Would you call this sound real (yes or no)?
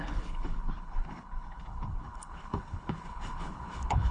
no